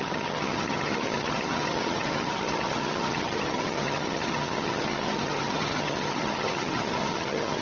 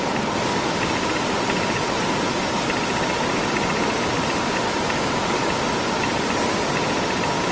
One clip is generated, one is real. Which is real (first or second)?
second